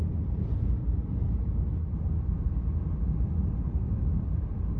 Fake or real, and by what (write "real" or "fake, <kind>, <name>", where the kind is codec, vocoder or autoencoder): real